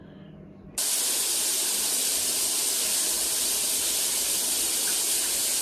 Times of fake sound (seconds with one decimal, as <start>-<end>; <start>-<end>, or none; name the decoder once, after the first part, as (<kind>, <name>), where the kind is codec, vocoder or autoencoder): 1.5-4.9 (vocoder, BigVGAN v2)